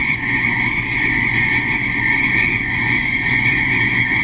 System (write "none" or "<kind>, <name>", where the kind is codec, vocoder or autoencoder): vocoder, Vocos